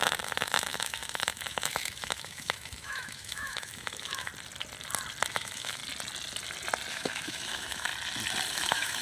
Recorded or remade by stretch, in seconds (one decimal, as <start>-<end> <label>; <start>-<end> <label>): 0.0-4.3 remade; 4.3-5.3 recorded; 5.3-5.8 remade; 5.8-6.9 recorded; 6.9-7.9 remade; 7.9-8.5 recorded; 8.5-9.0 remade